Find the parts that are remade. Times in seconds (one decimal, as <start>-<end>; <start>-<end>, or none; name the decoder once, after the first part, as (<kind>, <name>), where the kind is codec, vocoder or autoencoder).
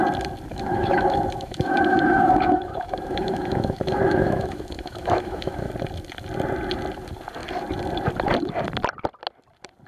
0.5-5.7 (autoencoder, DAC-VAE)